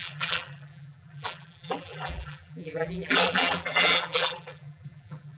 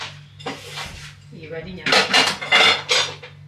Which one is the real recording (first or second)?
second